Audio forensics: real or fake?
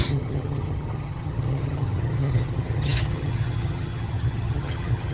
fake